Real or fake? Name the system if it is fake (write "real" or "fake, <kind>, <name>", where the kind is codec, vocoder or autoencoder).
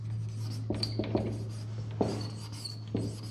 real